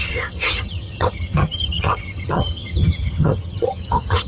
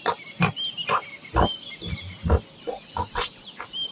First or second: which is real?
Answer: second